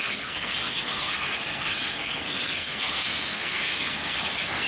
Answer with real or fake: fake